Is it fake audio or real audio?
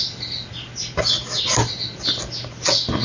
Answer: real